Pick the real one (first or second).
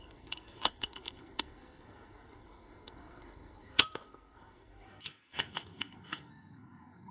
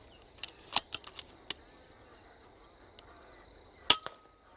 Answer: second